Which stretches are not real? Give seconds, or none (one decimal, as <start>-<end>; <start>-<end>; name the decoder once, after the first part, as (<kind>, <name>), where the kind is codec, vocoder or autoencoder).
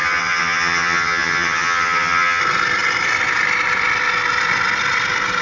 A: 0.0-2.4 (vocoder, HiFi-GAN)